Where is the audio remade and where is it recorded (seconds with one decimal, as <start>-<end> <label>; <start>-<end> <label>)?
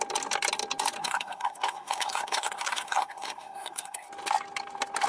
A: 0.0-1.0 recorded; 1.0-4.1 remade; 4.1-5.1 recorded